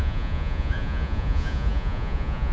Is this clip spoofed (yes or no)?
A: yes